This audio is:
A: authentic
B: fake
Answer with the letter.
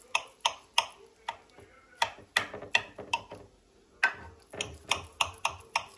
A